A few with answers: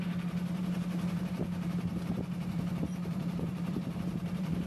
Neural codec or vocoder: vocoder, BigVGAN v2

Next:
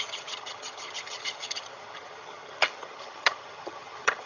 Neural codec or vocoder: vocoder, HiFi-GAN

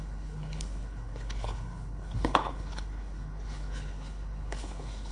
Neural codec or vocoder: codec, HILCodec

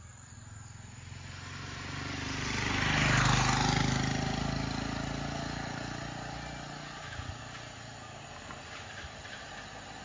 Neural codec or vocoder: none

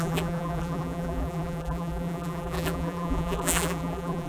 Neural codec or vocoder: vocoder, BigVGAN v2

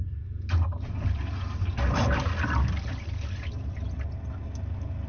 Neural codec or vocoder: none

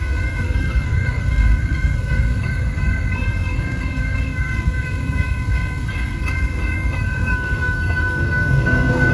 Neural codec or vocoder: codec, SNAC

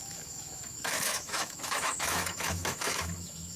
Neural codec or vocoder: autoencoder, DAC-VAE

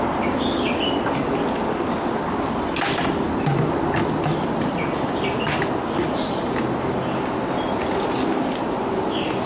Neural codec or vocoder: none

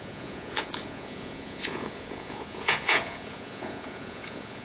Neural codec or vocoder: vocoder, Vocos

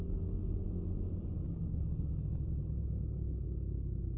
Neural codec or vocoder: none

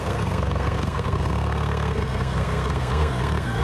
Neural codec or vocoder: codec, SNAC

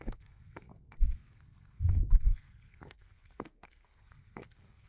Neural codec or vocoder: codec, SNAC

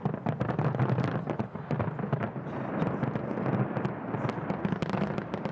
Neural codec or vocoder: none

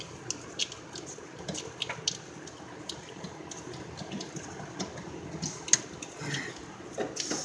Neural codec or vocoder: none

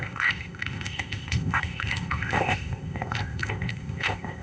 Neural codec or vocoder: codec, ZipCodec